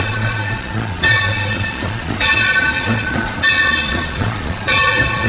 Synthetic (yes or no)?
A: yes